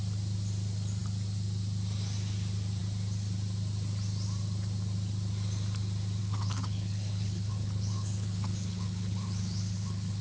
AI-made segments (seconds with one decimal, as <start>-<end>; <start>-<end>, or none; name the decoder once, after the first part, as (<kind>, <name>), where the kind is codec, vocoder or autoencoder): 6.2-10.2 (codec, HILCodec)